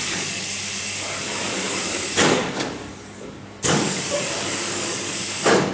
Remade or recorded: remade